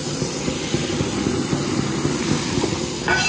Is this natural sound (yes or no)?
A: yes